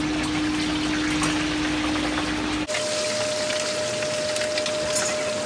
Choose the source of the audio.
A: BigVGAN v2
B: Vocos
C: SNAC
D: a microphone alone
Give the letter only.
D